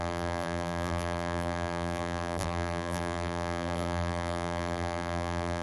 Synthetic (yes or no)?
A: yes